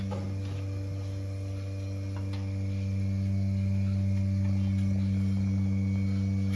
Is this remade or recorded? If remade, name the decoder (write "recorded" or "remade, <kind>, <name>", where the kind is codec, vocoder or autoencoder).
recorded